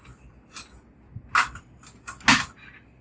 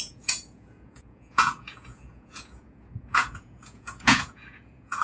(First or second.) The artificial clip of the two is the second